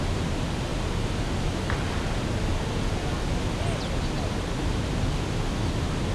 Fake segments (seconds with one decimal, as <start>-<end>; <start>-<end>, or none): none